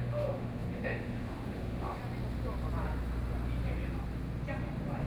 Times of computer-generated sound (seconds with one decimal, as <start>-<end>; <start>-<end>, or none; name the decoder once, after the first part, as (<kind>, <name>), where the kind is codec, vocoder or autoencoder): 0.0-2.0 (autoencoder, DAC-VAE)